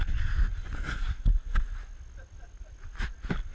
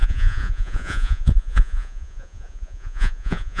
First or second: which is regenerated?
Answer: second